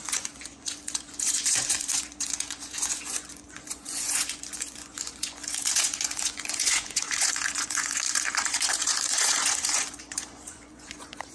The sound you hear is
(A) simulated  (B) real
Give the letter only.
A